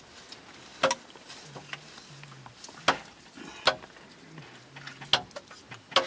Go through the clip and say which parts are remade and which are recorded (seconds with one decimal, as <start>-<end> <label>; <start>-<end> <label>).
0.0-6.1 recorded